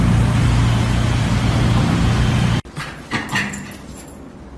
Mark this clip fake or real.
real